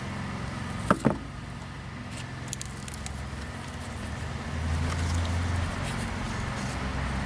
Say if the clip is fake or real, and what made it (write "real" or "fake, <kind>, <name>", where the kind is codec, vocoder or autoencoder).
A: real